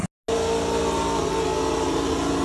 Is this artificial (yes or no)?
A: no